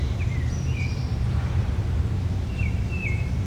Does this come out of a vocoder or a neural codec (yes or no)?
yes